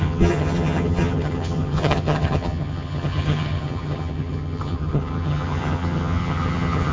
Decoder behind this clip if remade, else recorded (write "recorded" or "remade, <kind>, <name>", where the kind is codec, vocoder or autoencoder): remade, vocoder, HiFi-GAN